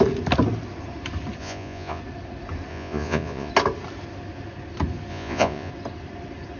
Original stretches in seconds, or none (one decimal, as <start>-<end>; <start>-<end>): 0.0-1.4; 2.0-2.7; 3.5-5.1; 5.7-6.6